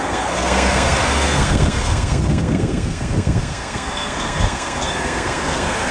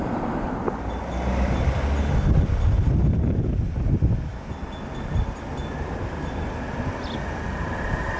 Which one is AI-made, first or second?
first